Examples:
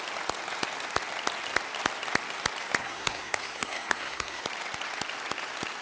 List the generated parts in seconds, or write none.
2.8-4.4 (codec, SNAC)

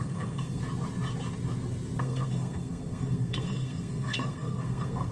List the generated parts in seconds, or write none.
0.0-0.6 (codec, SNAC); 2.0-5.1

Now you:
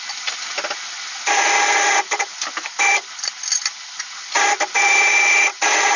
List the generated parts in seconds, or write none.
none

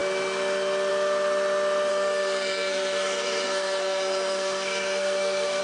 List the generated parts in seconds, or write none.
1.9-5.6 (codec, SNAC)

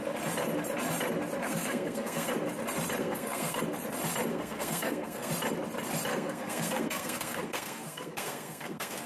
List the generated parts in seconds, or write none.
1.4-2.3 (codec, SNAC); 3.0-3.6; 4.3-5.3; 6.1-9.1

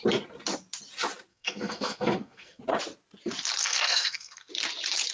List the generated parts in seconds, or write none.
1.3-2.6 (codec, SNAC); 3.6-4.5

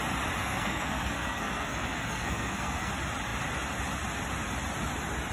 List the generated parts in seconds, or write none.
0.4-2.9 (codec, SNAC)